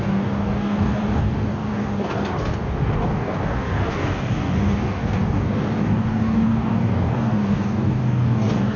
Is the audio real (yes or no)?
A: no